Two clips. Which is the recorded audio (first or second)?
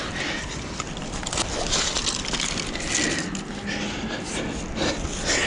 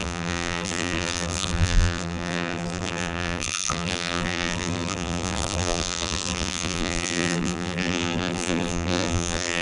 first